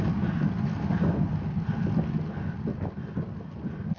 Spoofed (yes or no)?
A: no